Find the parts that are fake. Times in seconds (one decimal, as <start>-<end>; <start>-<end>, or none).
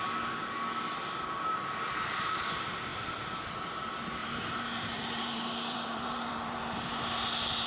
2.9-3.5; 4.2-6.6